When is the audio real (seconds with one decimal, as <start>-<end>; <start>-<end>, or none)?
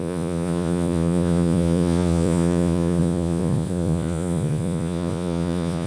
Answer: none